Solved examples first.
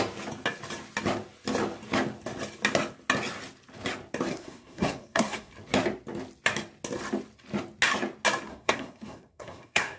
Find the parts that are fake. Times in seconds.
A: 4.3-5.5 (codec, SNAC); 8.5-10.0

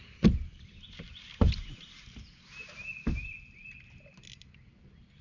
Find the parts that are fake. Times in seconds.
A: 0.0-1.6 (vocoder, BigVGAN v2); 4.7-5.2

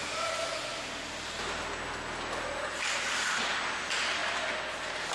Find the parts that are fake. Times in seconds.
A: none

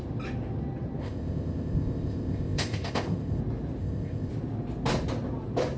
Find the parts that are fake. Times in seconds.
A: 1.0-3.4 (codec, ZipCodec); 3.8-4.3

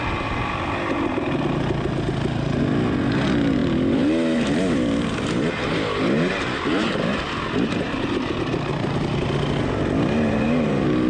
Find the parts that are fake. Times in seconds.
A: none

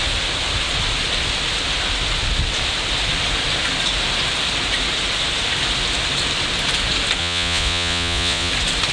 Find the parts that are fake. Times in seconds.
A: 7.2-8.5 (vocoder, Vocos)

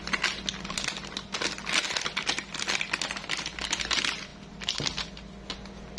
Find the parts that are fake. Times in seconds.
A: none